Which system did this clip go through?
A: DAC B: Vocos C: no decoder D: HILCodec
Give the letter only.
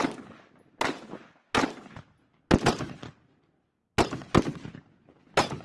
C